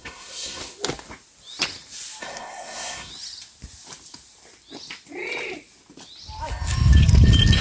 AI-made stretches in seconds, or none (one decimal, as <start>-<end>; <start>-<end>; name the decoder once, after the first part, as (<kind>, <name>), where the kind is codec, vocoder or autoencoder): 0.0-0.6 (codec, SNAC); 2.2-3.1